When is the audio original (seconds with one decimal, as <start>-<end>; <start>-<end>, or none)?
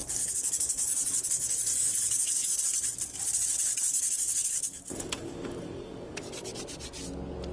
2.6-3.9; 6.5-7.5